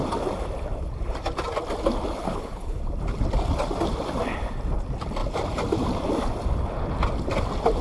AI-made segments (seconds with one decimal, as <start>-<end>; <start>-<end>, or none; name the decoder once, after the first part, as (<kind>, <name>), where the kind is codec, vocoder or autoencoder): 2.2-2.8 (codec, HILCodec)